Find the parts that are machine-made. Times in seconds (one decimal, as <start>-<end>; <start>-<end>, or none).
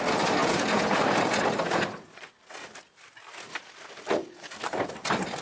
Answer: 0.4-1.0